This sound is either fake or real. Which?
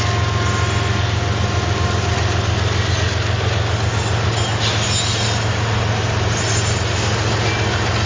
real